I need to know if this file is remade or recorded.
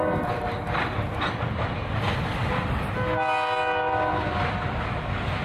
recorded